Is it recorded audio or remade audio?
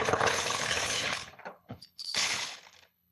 remade